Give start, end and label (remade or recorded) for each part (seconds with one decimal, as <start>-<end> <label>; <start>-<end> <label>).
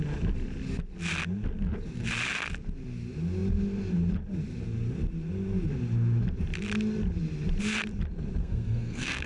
0.0-8.4 recorded; 8.4-9.3 remade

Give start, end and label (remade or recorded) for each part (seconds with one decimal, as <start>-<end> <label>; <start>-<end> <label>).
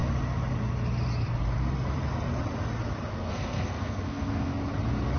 0.0-3.1 recorded; 3.1-4.5 remade; 4.5-5.2 recorded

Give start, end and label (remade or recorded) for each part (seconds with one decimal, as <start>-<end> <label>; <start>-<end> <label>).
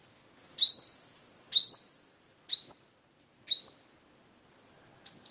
0.0-5.3 recorded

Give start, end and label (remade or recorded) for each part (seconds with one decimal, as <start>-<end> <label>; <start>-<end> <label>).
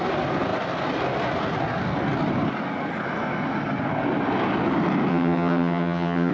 0.0-5.1 recorded; 5.1-6.3 remade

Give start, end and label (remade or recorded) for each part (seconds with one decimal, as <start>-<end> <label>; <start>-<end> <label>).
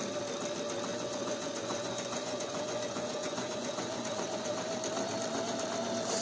0.0-0.9 recorded; 0.9-4.5 remade; 4.5-6.2 recorded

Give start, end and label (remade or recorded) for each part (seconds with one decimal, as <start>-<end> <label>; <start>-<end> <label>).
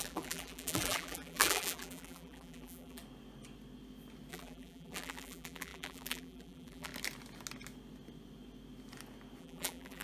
0.0-3.0 remade; 3.0-4.3 recorded; 4.3-6.9 remade; 6.9-9.4 recorded; 9.4-10.0 remade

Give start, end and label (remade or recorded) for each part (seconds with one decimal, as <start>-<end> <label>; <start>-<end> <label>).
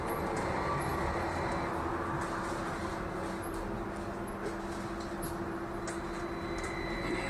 0.0-7.3 recorded